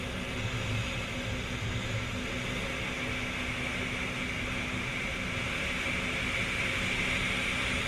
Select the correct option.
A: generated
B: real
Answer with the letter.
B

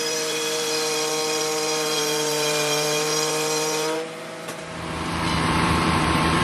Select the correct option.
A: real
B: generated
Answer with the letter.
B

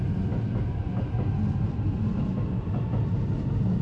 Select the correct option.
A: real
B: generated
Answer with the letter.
A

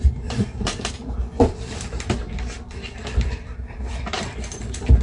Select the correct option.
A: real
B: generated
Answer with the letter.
B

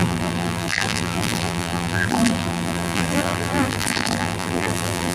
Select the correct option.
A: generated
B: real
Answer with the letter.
A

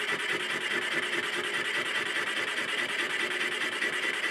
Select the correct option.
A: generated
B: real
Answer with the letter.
B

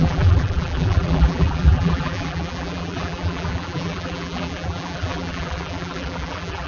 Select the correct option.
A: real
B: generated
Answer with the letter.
B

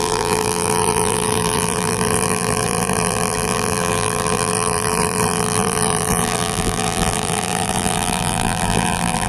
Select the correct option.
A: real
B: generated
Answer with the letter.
B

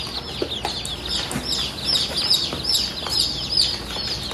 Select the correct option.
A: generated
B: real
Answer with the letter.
B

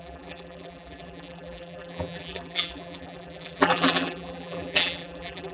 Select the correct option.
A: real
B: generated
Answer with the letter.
B